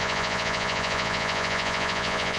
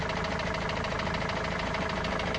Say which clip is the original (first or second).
second